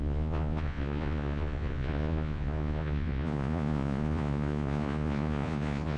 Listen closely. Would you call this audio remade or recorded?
remade